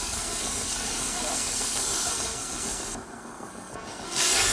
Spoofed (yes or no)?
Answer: yes